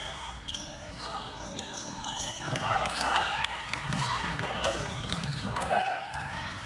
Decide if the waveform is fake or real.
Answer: fake